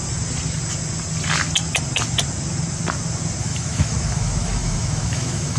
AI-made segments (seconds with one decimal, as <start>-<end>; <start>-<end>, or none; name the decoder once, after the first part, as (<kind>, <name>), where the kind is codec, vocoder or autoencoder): 3.4-5.6 (autoencoder, DAC-VAE)